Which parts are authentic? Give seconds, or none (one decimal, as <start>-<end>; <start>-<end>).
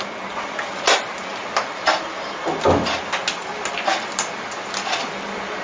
0.0-5.6